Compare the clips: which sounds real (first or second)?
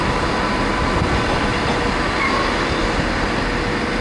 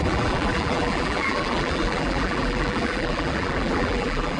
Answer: first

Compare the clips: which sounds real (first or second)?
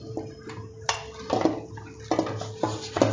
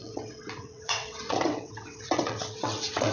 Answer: first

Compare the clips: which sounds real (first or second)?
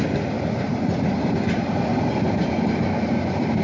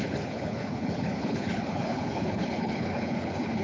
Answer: first